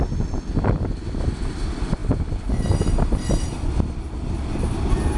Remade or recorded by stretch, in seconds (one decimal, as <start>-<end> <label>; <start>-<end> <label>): 0.0-5.2 recorded